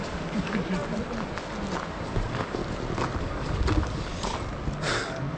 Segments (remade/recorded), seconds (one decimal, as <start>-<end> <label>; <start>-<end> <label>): 0.0-0.8 remade; 0.8-1.9 recorded; 1.9-2.6 remade; 2.6-3.2 recorded; 3.2-4.1 remade; 4.1-4.9 recorded; 4.9-5.4 remade